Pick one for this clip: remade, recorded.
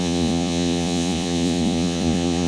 remade